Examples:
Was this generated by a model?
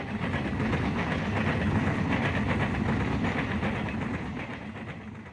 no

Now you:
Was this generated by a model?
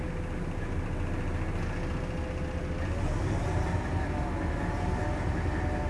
no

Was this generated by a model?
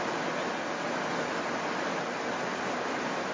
no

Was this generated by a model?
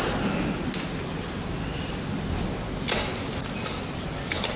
no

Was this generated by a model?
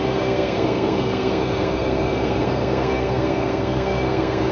yes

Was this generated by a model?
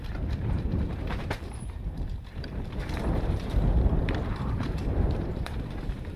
yes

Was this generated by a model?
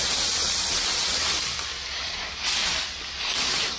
no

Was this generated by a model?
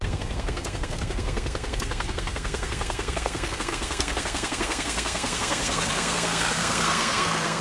yes